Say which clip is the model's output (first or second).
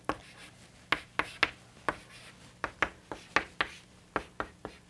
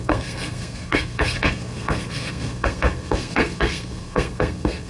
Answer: second